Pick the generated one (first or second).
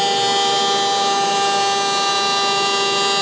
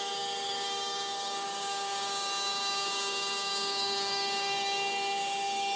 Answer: second